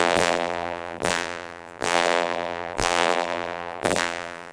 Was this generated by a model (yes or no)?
yes